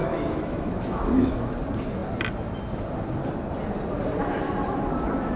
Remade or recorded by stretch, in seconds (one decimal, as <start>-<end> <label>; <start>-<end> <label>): 0.0-1.5 remade; 1.5-5.4 recorded